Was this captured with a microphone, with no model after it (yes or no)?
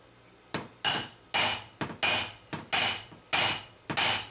yes